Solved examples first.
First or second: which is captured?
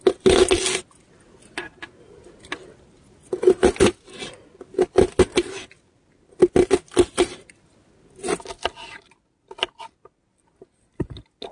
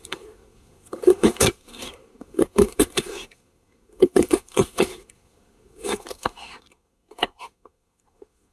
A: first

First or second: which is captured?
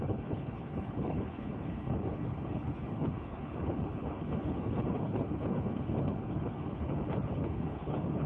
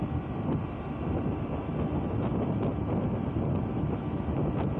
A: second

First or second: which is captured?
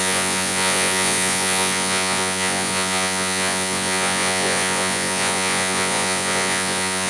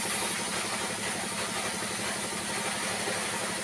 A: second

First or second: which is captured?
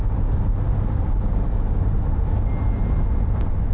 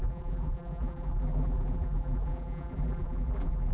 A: first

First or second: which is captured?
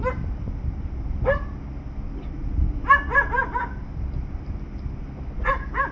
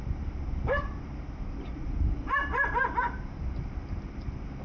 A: first